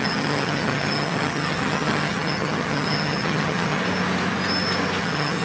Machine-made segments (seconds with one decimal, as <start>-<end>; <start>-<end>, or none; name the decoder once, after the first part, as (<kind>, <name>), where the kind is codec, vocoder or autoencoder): 0.0-3.8 (vocoder, HiFi-GAN); 5.0-5.4